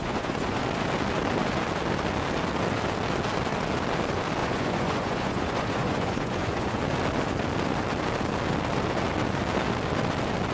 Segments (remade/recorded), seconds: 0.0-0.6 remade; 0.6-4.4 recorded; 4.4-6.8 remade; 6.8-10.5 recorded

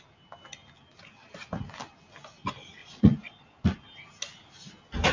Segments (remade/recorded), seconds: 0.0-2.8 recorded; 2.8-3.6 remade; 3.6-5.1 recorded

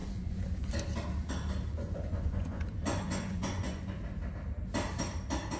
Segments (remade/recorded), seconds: 0.0-0.7 remade; 0.7-1.7 recorded; 1.7-3.8 remade; 3.8-5.6 recorded

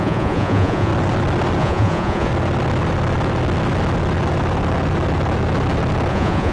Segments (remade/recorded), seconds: 0.0-0.9 remade; 0.9-1.6 recorded; 1.6-2.3 remade; 2.3-6.1 recorded; 6.1-6.5 remade